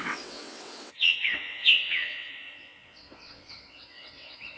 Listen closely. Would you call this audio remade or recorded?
remade